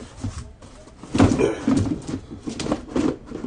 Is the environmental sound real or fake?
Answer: real